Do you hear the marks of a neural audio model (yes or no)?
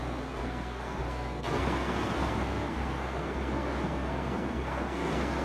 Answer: yes